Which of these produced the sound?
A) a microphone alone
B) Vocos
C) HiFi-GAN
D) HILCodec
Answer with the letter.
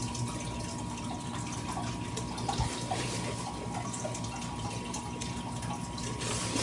A